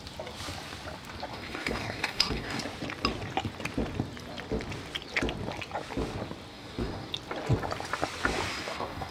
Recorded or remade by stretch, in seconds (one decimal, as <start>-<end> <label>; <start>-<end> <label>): 0.0-1.3 recorded; 1.3-2.6 remade; 2.6-6.5 recorded; 6.5-7.1 remade; 7.1-8.5 recorded; 8.5-9.1 remade

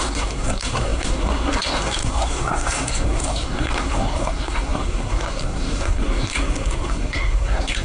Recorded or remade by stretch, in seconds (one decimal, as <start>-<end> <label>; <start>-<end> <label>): 0.0-7.8 remade